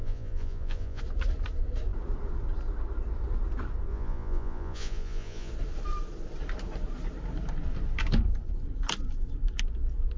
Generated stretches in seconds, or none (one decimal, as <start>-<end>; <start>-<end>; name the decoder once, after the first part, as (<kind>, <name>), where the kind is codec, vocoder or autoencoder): 0.0-1.0 (vocoder, Vocos); 3.9-5.5